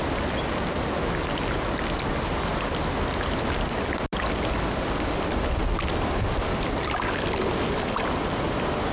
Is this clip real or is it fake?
real